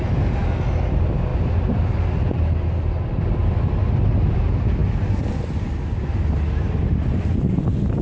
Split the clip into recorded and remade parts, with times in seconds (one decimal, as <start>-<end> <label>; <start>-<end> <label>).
0.0-8.0 recorded